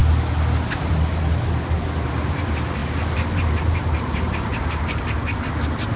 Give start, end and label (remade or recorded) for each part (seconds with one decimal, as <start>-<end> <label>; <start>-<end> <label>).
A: 0.0-2.8 recorded; 2.8-5.4 remade; 5.4-6.0 recorded